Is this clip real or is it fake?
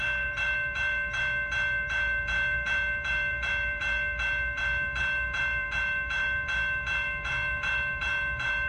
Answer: fake